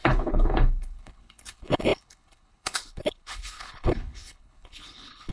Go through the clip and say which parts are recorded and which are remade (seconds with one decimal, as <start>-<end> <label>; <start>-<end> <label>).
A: 0.0-5.3 remade